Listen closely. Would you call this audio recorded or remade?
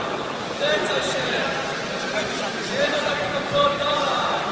remade